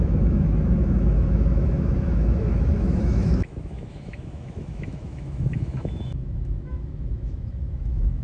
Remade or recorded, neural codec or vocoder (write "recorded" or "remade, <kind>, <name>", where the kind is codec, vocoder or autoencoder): remade, autoencoder, DAC-VAE